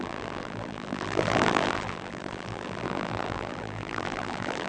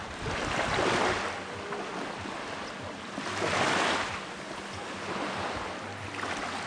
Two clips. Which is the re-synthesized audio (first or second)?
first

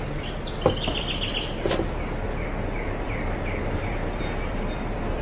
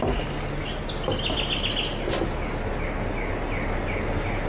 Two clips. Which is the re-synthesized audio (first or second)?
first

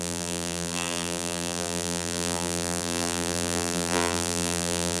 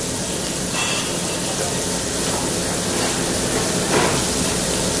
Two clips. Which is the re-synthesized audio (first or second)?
first